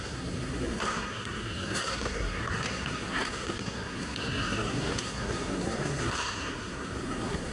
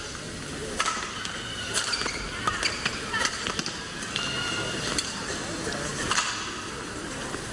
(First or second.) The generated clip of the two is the first